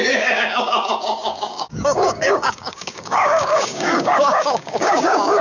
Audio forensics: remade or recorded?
remade